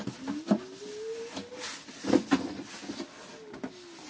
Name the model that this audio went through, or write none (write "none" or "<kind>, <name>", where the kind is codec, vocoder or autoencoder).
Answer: none